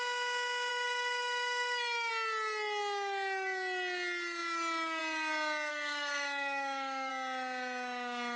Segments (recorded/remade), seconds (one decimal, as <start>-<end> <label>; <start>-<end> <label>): 0.0-0.7 recorded; 0.7-2.1 remade; 2.1-5.7 recorded; 5.7-7.1 remade; 7.1-8.4 recorded